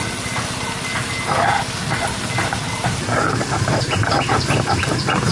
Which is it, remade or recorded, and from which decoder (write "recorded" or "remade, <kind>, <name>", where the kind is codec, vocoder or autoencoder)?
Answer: recorded